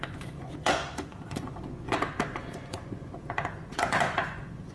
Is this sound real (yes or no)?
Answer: no